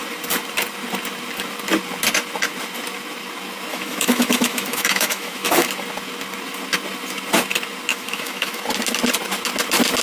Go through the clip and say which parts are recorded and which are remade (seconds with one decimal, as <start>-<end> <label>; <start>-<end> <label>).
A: 0.0-3.7 recorded; 3.7-5.7 remade; 5.7-7.9 recorded; 7.9-8.6 remade; 8.6-10.0 recorded